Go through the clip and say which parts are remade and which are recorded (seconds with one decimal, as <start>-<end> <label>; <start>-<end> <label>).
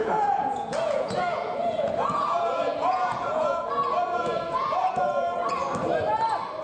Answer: 0.0-5.6 remade; 5.6-6.6 recorded